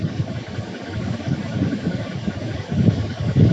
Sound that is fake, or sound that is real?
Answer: fake